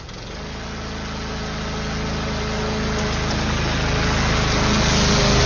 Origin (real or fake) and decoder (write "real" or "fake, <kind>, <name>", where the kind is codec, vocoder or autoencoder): real